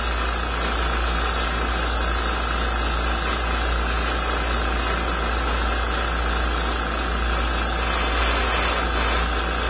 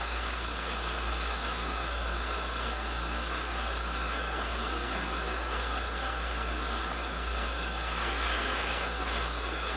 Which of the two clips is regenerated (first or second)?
second